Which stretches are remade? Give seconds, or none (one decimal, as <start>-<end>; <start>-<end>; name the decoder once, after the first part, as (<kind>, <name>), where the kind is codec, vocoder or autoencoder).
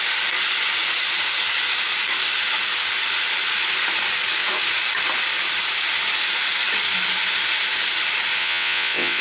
8.4-9.2 (vocoder, WaveNeXt)